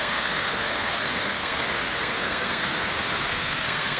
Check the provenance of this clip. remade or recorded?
remade